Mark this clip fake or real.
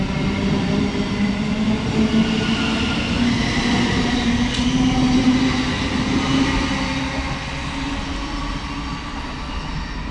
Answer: real